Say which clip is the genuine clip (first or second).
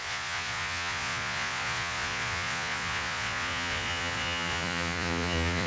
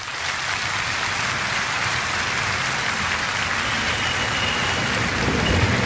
second